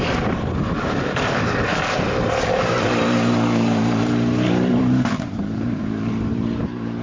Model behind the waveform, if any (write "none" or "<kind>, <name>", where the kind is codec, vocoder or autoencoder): vocoder, BigVGAN v2